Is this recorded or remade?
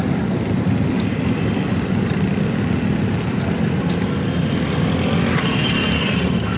recorded